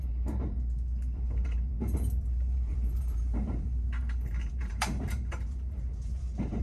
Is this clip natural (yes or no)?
no